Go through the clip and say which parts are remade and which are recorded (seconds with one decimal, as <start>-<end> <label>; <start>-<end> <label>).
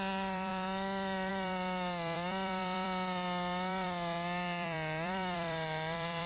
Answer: 0.0-6.3 remade